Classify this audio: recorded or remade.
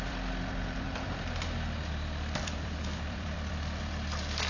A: remade